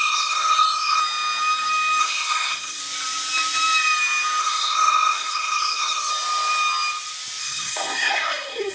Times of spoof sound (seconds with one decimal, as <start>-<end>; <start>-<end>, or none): 0.0-1.0; 2.0-2.8; 4.4-6.1; 7.4-8.7